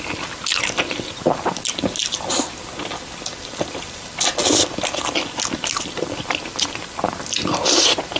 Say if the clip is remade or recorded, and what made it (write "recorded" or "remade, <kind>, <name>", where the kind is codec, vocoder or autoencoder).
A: recorded